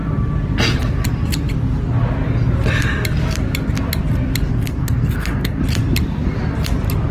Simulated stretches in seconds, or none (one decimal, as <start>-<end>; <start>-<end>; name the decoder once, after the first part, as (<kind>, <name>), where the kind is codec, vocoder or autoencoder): 4.5-5.6 (codec, SNAC)